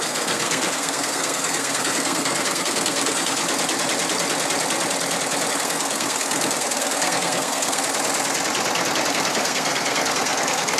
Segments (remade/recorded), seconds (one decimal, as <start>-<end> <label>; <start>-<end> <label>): 0.0-3.4 remade; 3.4-5.5 recorded; 5.5-7.8 remade; 7.8-9.1 recorded; 9.1-10.8 remade